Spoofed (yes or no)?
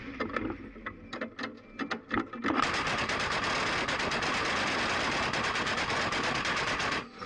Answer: no